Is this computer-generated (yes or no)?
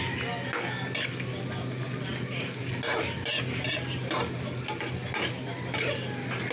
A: no